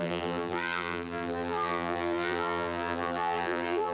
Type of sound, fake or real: fake